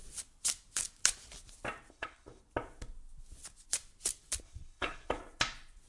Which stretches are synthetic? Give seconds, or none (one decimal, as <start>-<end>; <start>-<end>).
1.9-2.4; 4.4-5.2